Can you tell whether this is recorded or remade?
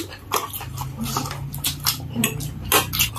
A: recorded